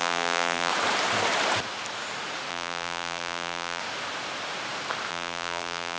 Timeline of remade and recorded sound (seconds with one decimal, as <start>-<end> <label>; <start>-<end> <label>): 0.0-0.7 remade; 0.7-2.5 recorded; 2.5-3.8 remade; 3.8-5.1 recorded; 5.1-6.0 remade